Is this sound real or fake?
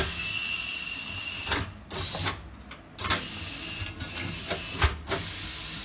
real